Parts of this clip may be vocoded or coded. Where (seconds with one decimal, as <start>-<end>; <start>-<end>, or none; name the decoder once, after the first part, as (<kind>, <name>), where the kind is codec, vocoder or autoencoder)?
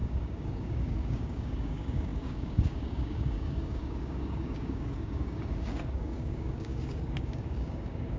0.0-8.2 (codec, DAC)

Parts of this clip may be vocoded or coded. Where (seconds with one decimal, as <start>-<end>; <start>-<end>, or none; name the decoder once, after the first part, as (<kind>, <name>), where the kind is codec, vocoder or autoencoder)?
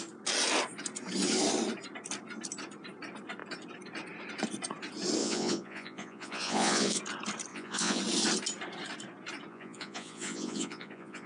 5.2-7.0 (vocoder, Vocos); 7.5-8.0; 9.5-11.3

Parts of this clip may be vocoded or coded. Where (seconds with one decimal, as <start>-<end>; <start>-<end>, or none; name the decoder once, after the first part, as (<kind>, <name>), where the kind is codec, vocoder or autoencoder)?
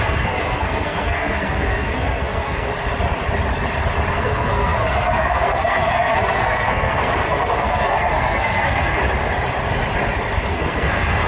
0.0-2.7 (codec, SNAC); 4.1-9.0; 10.5-11.3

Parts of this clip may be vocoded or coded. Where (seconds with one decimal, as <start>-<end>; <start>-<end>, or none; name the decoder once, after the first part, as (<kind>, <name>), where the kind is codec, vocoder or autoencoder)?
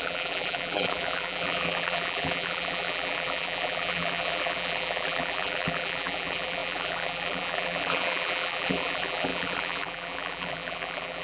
0.0-11.2 (vocoder, BigVGAN v2)